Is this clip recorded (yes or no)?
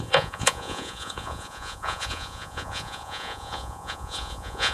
no